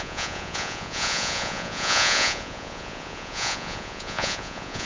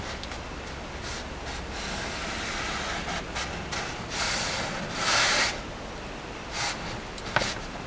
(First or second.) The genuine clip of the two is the second